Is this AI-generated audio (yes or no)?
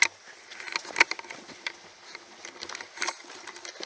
no